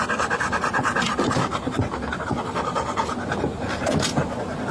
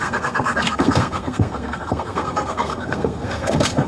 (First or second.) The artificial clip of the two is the second